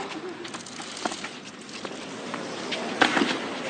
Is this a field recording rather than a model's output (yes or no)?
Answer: yes